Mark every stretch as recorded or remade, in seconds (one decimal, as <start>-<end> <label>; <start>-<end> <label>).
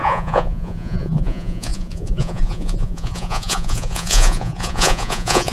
0.0-5.5 remade